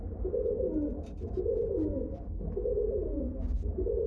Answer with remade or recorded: recorded